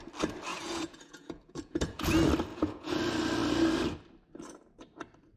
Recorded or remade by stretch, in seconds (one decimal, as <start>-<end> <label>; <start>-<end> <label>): 0.0-0.5 recorded; 0.5-2.1 remade; 2.1-2.5 recorded; 2.5-3.0 remade; 3.0-5.4 recorded